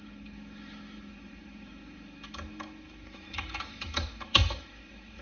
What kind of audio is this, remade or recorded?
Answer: remade